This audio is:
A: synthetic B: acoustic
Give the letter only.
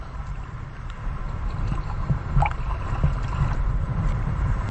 A